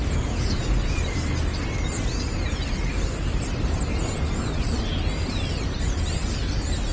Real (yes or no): yes